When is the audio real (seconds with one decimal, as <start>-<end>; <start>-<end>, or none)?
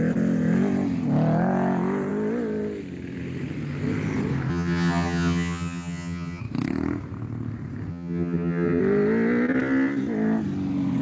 0.0-4.5; 6.4-7.9; 8.8-11.0